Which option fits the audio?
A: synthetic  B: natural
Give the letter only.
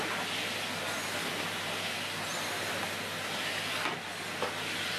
B